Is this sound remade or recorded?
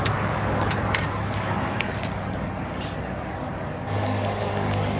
remade